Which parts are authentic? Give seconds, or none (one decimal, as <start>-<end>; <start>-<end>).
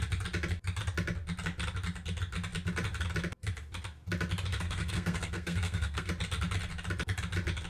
0.0-4.5; 6.1-7.7